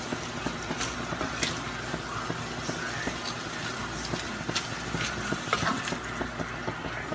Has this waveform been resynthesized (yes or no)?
no